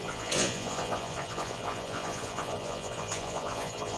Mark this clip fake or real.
fake